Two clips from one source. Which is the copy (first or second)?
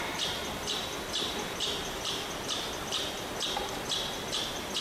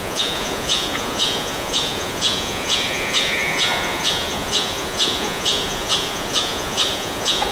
second